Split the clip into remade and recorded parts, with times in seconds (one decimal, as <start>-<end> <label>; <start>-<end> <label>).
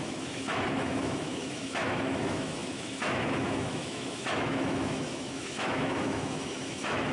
0.0-7.1 remade